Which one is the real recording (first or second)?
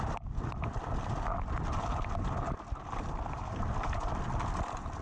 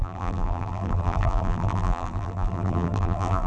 first